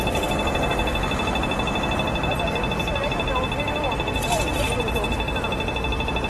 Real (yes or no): yes